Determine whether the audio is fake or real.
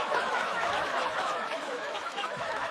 fake